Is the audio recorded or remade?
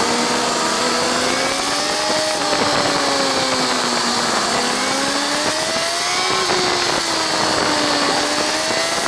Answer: recorded